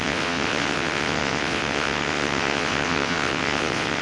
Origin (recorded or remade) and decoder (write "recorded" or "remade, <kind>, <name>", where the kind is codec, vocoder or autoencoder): remade, vocoder, WaveNeXt